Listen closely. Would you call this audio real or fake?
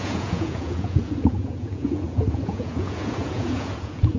fake